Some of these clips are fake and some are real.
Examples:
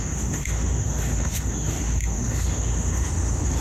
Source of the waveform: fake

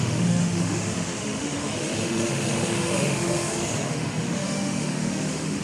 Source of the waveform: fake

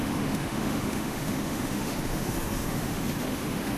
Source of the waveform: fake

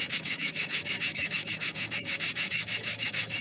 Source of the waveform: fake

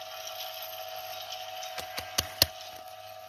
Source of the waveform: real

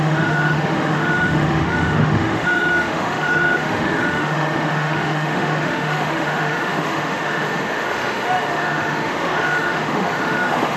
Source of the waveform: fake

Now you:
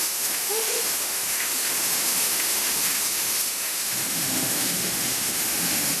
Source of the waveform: fake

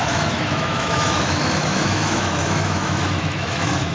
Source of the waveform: fake